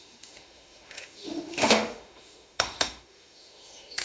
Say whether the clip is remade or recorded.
remade